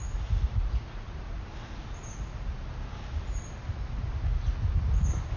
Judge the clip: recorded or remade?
recorded